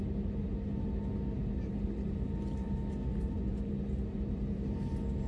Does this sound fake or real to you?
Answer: real